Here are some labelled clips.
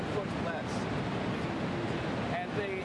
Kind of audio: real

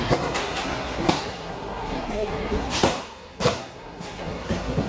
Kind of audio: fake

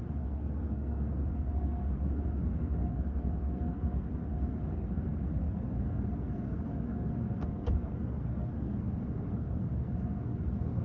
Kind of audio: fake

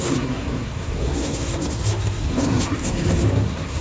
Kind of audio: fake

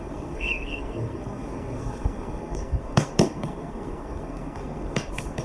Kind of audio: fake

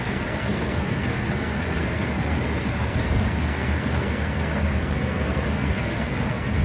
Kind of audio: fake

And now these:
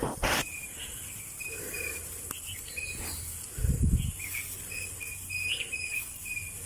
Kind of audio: real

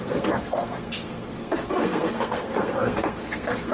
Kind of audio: fake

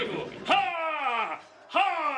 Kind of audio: real